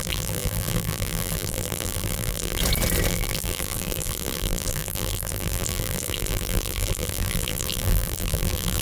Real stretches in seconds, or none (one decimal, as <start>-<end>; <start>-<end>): 2.6-3.1